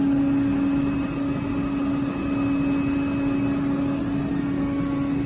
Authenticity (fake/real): real